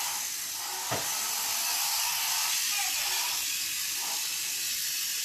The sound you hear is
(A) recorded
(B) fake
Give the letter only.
A